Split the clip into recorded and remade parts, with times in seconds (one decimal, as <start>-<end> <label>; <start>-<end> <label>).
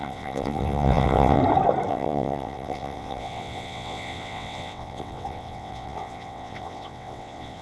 0.0-1.4 remade; 1.4-1.9 recorded; 1.9-7.6 remade